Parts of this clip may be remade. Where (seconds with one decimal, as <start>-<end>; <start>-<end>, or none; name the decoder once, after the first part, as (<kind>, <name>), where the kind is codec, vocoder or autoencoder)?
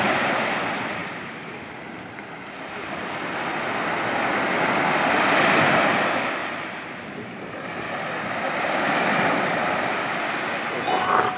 1.0-1.5 (vocoder, BigVGAN v2); 6.4-7.9